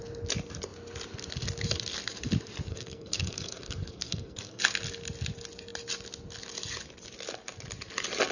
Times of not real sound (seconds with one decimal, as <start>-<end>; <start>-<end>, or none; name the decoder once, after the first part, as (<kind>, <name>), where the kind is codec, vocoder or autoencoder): 2.7-4.6 (codec, SNAC)